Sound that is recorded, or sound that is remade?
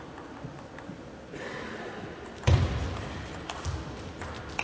recorded